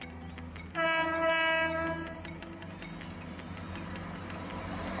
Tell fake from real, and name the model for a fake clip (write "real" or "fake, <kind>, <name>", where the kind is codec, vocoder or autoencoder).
real